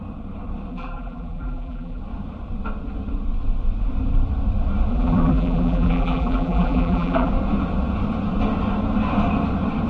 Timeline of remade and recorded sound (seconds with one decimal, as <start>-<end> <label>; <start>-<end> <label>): 0.0-0.7 recorded; 0.7-2.0 remade; 2.0-4.9 recorded; 4.9-7.3 remade; 7.3-9.9 recorded